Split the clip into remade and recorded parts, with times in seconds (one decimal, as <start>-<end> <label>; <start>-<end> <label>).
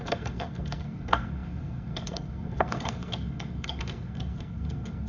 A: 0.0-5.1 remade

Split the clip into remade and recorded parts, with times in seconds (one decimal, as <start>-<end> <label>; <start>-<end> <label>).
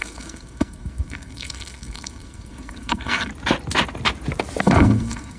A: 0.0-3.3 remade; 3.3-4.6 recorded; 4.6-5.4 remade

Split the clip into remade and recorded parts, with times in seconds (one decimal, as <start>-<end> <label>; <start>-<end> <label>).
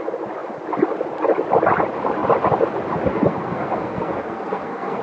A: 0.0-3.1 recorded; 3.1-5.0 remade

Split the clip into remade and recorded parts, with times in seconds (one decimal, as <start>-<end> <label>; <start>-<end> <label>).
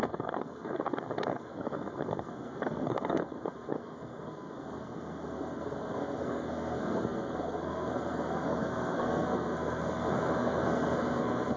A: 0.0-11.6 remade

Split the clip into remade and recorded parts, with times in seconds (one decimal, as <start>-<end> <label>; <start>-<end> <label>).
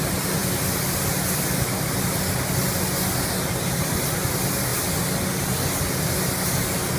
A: 0.0-7.0 recorded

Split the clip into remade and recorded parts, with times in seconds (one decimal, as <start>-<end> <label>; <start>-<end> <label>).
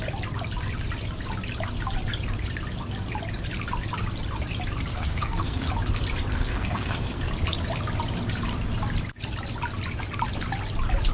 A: 0.0-4.9 recorded; 4.9-5.7 remade; 5.7-6.3 recorded; 6.3-7.3 remade; 7.3-11.1 recorded